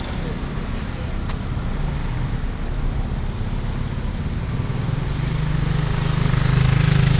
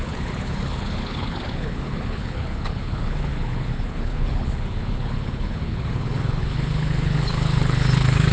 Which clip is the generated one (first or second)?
second